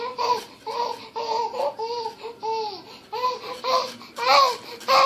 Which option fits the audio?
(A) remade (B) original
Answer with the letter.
B